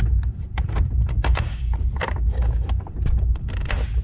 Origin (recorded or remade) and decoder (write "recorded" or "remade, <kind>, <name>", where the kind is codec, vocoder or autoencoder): remade, vocoder, BigVGAN v2